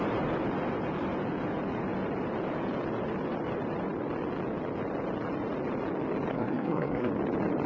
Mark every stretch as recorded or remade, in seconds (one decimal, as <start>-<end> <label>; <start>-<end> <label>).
0.0-6.3 recorded; 6.3-7.1 remade; 7.1-7.7 recorded